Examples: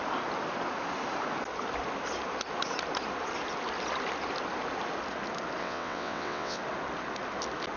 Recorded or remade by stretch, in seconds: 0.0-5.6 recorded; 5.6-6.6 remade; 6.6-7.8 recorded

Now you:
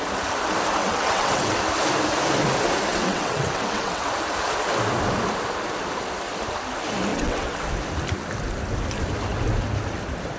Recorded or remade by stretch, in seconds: 0.0-0.8 recorded; 0.8-1.6 remade; 1.6-2.9 recorded; 2.9-4.1 remade; 4.1-7.1 recorded; 7.1-7.6 remade; 7.6-10.4 recorded

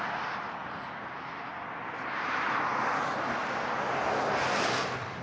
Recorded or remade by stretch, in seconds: 0.0-5.2 recorded

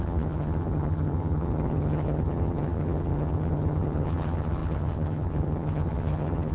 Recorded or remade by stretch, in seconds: 0.0-6.5 remade

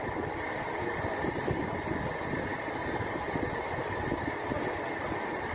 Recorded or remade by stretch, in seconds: 0.0-5.5 recorded